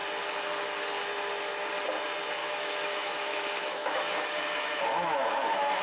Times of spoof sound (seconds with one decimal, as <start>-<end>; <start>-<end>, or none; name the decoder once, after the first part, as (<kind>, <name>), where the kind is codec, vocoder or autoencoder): 2.4-5.8 (autoencoder, DAC-VAE)